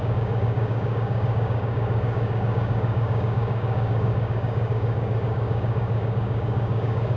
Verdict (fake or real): fake